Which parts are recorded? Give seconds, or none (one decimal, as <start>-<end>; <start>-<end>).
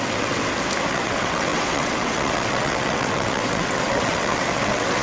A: 0.4-0.9